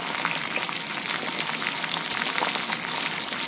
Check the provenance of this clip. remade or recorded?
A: recorded